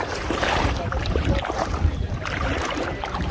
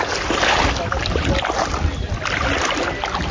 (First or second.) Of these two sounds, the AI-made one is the first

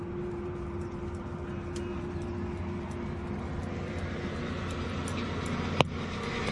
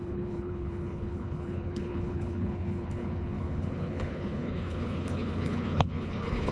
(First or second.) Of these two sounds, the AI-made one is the second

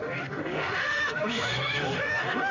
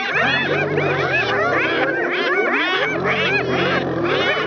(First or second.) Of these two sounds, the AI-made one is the first